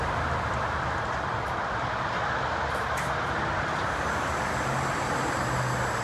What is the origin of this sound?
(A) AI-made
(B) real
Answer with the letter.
B